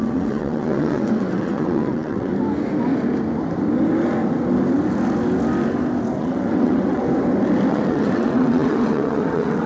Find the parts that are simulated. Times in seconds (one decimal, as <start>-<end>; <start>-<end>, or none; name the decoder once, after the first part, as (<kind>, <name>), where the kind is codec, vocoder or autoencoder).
0.0-2.3 (vocoder, WaveNeXt); 6.2-7.0; 7.7-9.7